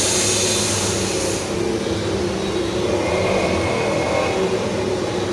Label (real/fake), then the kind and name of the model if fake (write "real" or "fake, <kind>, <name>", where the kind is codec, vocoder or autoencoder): real